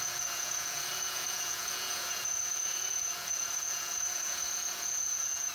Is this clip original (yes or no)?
no